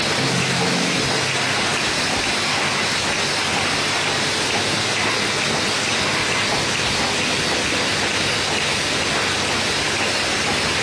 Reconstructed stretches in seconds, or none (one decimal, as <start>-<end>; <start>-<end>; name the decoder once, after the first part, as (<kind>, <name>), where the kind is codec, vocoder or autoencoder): 0.4-1.0 (autoencoder, DAC-VAE)